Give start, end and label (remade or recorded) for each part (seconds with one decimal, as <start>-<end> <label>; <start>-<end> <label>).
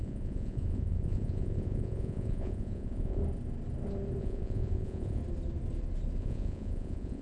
0.0-3.2 remade; 3.2-4.2 recorded; 4.2-5.2 remade; 5.2-6.2 recorded; 6.2-7.2 remade